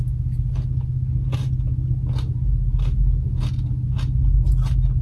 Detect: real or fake real